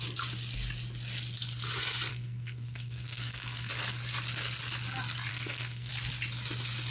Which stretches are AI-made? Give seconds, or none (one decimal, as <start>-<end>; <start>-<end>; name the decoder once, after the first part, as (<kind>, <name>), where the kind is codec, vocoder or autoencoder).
2.1-3.7 (codec, SNAC); 5.3-5.9